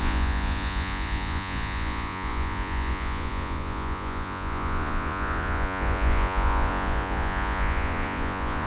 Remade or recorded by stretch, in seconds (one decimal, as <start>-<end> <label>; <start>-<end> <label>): 0.0-8.7 remade